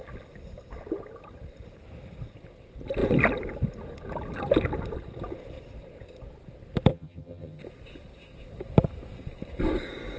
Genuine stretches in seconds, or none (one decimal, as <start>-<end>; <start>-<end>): 0.0-6.9; 7.6-10.2